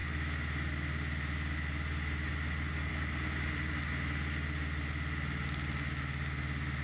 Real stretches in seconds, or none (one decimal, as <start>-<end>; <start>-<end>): 0.0-6.8